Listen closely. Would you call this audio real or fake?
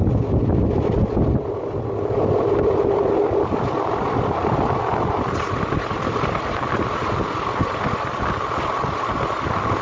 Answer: real